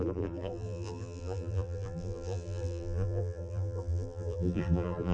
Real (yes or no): no